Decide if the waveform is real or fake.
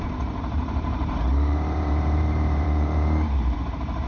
fake